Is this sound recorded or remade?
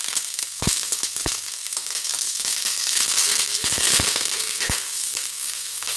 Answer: remade